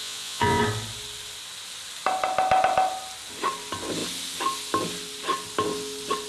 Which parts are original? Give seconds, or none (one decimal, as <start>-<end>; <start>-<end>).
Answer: 0.6-6.3